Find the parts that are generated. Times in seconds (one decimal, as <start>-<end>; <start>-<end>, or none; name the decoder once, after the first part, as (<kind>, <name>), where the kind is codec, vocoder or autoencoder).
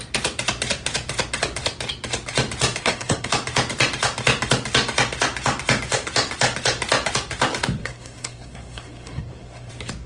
2.8-3.3 (codec, SNAC); 7.8-9.7